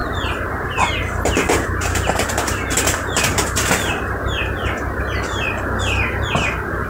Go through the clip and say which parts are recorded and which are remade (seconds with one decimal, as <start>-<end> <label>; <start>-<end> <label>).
0.0-6.9 recorded